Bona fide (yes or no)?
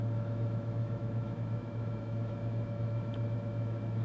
no